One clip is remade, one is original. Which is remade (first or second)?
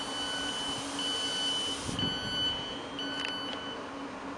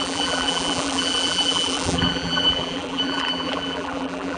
second